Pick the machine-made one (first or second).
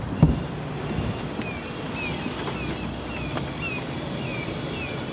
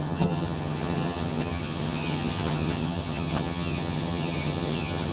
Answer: second